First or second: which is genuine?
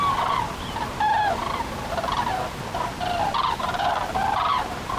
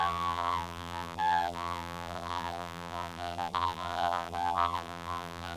first